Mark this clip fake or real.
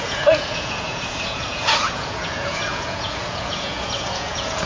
fake